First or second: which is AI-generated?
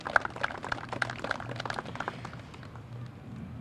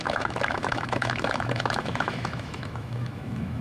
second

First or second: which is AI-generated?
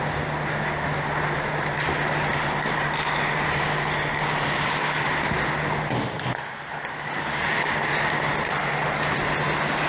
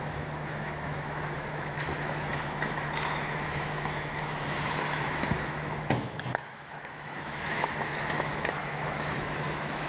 second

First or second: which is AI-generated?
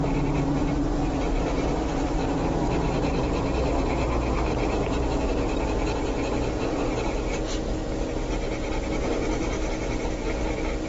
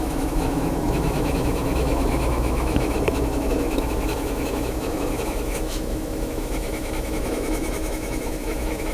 second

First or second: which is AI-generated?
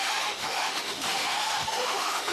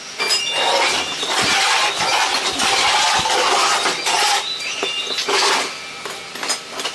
first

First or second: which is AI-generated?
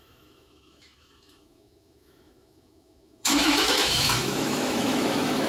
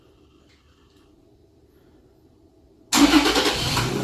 first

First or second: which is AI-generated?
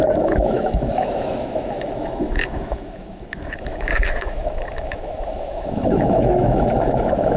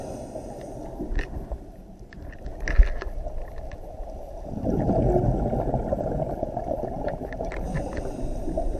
first